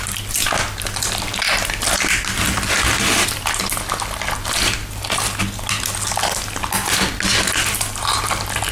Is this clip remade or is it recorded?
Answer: recorded